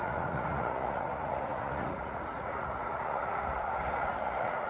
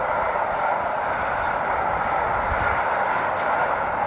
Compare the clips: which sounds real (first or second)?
second